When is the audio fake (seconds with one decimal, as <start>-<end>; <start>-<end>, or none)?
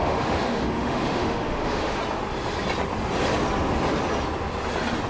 0.0-2.0